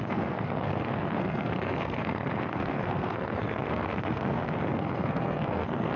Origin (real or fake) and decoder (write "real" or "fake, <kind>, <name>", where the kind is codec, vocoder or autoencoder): fake, codec, SNAC